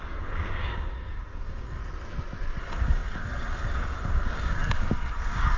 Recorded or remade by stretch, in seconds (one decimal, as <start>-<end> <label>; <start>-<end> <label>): 0.0-1.8 remade; 1.8-2.6 recorded; 2.6-5.6 remade